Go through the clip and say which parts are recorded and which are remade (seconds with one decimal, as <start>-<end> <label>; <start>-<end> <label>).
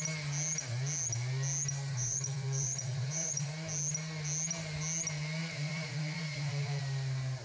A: 0.0-1.9 recorded; 1.9-3.5 remade; 3.5-5.4 recorded; 5.4-6.8 remade; 6.8-7.4 recorded